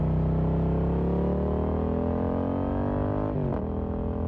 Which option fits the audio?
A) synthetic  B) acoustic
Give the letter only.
B